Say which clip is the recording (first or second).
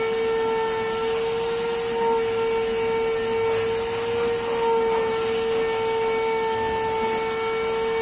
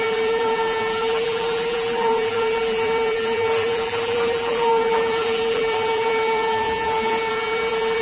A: first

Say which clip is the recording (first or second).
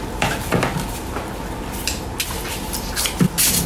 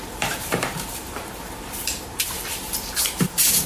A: first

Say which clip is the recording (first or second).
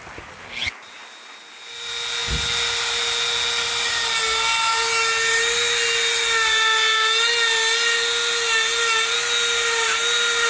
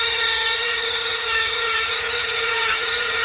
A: first